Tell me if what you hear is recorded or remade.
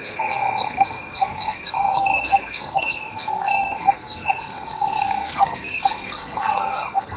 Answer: remade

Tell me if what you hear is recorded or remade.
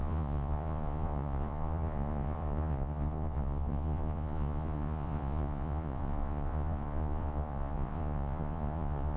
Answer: remade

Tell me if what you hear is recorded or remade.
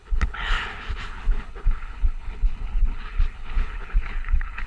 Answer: remade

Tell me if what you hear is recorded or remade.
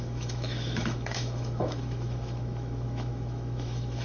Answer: remade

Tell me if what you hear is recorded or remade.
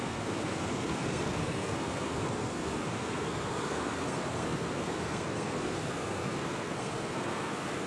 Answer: remade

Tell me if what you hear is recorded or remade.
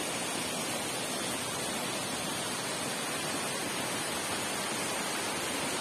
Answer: recorded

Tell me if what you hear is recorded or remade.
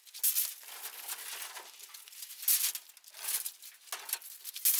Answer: recorded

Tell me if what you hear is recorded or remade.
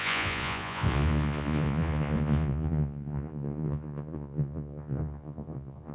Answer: remade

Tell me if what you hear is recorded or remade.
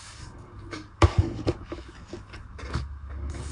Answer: remade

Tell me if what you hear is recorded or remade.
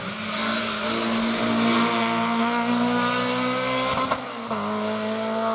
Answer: recorded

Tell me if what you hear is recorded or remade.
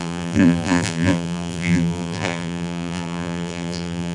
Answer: remade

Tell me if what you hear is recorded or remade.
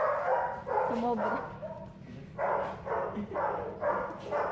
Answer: recorded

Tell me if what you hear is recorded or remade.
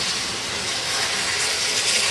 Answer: recorded